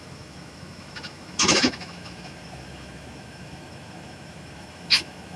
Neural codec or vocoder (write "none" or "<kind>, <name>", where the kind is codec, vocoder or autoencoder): autoencoder, DAC-VAE